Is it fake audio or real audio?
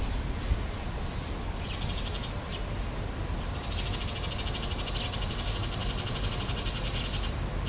real